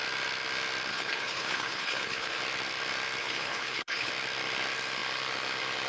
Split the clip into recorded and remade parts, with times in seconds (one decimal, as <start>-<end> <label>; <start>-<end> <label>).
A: 0.0-0.9 recorded; 0.9-2.4 remade; 2.4-3.2 recorded; 3.2-4.1 remade; 4.1-5.9 recorded